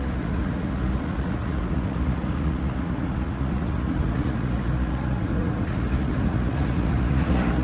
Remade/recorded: remade